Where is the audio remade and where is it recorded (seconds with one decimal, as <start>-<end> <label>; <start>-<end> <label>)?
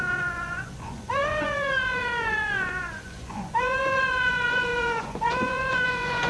0.0-6.3 remade